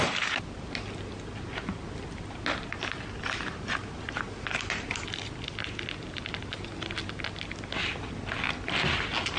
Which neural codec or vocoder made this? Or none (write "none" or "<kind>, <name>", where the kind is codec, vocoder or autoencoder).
none